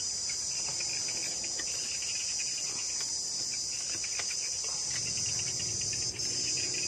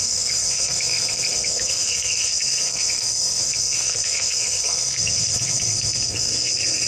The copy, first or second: second